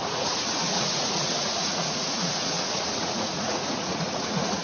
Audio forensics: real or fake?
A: fake